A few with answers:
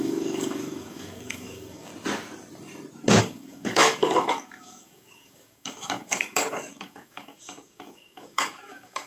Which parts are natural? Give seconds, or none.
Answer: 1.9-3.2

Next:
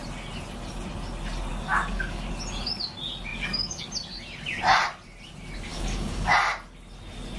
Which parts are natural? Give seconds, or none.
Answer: 0.0-1.5; 2.3-3.3; 3.9-5.7; 6.3-7.4

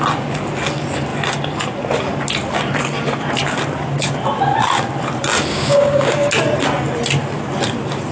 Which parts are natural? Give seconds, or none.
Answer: 0.0-5.5; 6.3-8.1

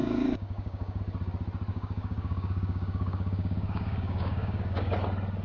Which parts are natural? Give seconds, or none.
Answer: 1.0-1.7; 4.9-5.4

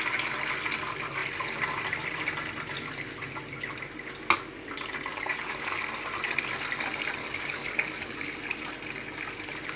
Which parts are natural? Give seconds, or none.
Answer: 0.0-5.1; 5.8-7.2; 8.3-9.8